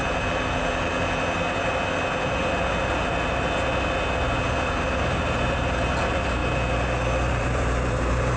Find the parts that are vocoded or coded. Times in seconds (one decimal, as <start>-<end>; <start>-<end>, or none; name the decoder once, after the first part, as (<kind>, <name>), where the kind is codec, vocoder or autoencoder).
4.8-6.4 (vocoder, BigVGAN v2); 7.3-8.4